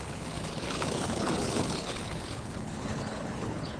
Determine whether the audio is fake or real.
fake